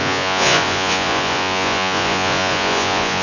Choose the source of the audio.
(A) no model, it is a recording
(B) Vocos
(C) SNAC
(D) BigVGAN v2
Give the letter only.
B